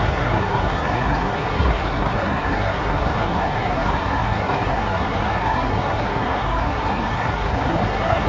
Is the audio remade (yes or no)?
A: yes